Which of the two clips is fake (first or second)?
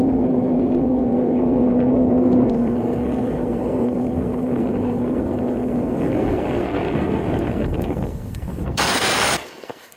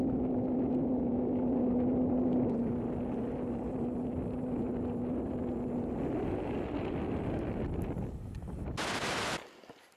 first